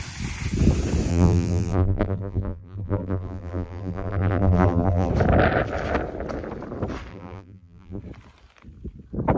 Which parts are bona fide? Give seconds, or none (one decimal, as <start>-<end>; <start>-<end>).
0.0-1.1; 5.1-7.1; 8.0-9.4